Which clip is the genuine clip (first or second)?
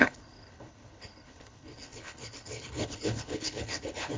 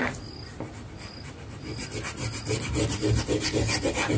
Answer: second